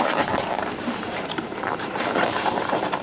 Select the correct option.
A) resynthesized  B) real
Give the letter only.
A